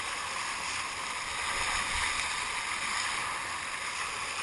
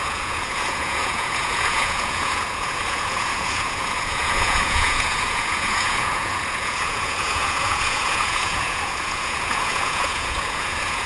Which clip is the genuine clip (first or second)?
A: first